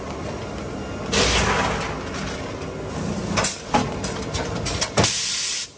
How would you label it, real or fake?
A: real